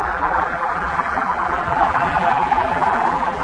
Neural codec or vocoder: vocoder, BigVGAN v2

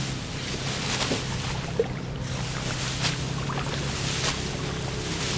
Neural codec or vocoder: none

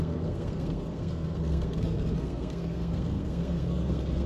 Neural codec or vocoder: codec, SNAC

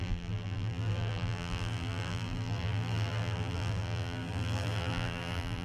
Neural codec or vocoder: vocoder, BigVGAN v2